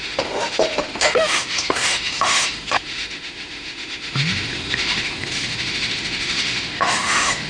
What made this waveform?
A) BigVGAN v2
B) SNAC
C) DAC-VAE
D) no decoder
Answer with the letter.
C